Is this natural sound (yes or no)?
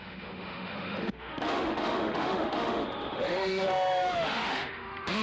no